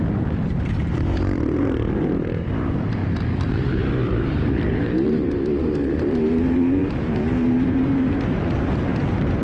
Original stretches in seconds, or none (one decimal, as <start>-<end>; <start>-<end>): none